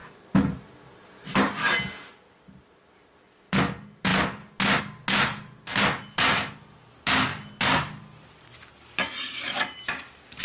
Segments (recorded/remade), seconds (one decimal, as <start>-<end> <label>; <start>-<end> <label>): 0.0-10.4 recorded